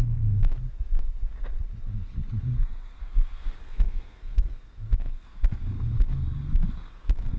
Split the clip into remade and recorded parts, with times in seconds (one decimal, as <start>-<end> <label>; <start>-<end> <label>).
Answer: 0.0-0.5 remade; 0.5-2.4 recorded; 2.4-7.4 remade